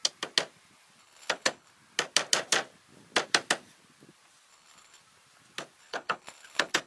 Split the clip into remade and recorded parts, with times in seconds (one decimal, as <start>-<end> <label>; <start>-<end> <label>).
0.0-1.0 recorded; 1.0-1.7 remade; 1.7-4.5 recorded; 4.5-5.0 remade; 5.0-5.8 recorded; 5.8-6.9 remade